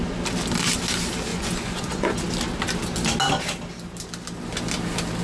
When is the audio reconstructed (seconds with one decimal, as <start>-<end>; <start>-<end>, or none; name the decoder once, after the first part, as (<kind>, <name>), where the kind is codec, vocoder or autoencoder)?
1.3-2.2 (vocoder, Vocos)